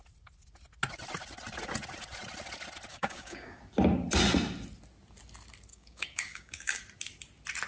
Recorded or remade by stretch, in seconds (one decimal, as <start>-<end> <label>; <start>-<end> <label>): 0.0-2.9 recorded; 2.9-3.6 remade; 3.6-5.7 recorded; 5.7-6.8 remade; 6.8-7.7 recorded